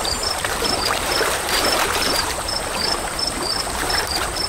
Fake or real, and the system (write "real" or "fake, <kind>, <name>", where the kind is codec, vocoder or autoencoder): fake, vocoder, BigVGAN v2